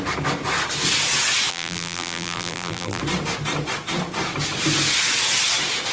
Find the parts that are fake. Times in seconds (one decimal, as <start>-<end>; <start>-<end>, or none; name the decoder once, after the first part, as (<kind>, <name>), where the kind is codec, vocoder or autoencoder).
1.5-3.0 (vocoder, BigVGAN v2)